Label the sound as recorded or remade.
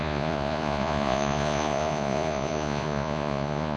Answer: remade